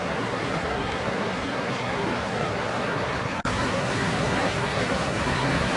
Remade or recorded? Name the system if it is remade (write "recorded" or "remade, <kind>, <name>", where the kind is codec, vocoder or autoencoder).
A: remade, codec, SNAC